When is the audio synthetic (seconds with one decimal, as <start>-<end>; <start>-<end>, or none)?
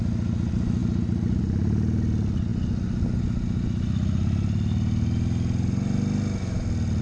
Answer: none